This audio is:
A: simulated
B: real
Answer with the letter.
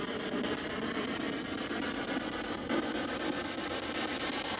B